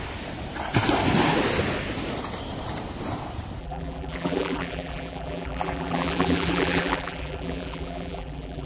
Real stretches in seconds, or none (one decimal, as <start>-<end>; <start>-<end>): 0.0-3.6